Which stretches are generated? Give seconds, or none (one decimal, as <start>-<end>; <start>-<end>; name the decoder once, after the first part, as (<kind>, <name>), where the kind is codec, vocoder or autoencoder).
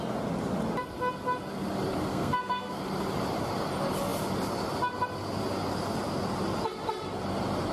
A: 2.1-2.8 (codec, SNAC)